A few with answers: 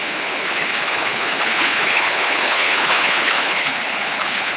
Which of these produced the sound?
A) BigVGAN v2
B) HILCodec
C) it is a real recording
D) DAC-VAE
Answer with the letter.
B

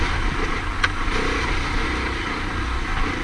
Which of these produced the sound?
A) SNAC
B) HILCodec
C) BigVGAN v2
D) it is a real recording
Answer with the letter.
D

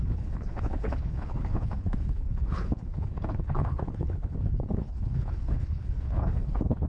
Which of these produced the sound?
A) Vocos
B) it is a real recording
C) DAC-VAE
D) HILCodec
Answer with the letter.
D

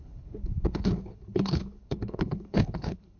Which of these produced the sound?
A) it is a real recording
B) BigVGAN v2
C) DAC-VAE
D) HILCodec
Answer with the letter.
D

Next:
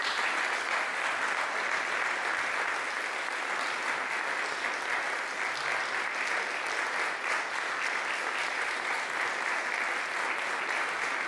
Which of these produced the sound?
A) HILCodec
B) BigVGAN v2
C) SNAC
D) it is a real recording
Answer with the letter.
D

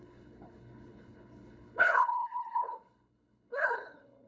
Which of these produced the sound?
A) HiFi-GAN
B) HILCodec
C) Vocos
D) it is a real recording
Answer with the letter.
B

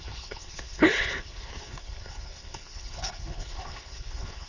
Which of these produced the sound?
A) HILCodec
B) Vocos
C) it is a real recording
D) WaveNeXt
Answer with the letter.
A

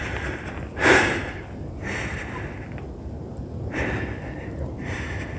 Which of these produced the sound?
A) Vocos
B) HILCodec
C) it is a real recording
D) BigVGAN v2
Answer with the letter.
C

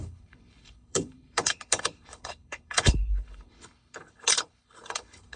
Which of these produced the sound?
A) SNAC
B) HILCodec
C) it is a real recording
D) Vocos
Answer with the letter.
B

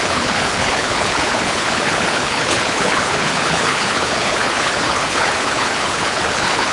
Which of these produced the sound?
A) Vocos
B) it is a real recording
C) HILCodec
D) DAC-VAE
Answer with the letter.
C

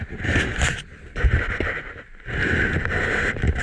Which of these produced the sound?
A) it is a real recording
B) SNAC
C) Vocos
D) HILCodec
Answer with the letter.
A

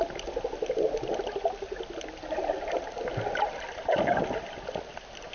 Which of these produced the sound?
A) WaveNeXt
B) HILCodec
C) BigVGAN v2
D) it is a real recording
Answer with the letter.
D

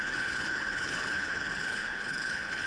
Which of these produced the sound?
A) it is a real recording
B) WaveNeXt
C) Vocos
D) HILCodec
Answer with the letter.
D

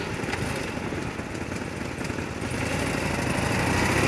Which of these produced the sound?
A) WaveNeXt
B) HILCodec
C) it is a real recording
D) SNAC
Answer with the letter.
C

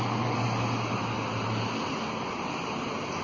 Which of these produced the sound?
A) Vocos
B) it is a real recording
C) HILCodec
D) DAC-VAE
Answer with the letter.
B